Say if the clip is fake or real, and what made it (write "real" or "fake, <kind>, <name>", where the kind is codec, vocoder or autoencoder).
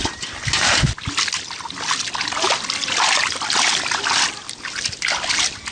real